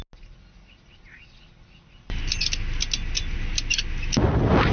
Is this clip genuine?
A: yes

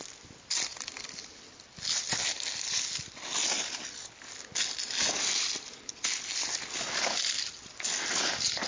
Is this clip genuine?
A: yes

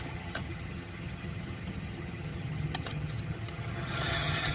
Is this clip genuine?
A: no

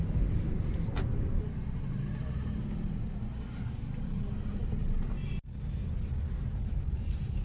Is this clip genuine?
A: yes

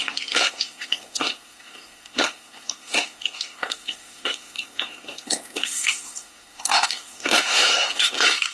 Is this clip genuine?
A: no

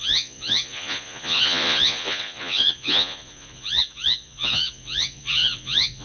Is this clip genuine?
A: no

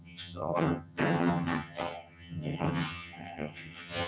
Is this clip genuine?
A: no